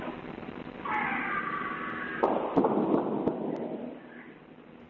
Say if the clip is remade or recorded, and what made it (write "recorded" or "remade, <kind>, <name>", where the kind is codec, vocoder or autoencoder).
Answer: recorded